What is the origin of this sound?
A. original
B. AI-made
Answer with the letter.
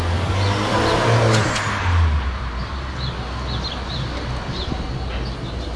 A